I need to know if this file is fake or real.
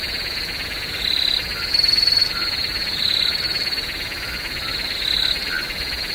real